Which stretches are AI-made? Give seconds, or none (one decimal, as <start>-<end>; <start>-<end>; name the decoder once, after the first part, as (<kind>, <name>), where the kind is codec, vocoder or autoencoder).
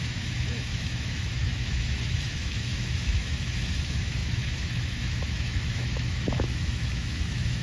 0.0-7.6 (autoencoder, DAC-VAE)